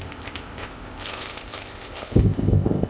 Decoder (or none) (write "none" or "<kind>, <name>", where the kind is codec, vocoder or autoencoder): codec, ZipCodec